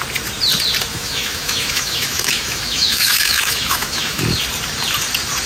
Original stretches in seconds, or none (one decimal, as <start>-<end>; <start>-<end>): 0.0-0.9; 4.2-5.5